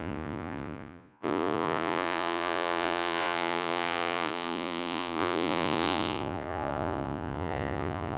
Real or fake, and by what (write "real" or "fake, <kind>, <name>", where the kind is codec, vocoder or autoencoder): fake, vocoder, Vocos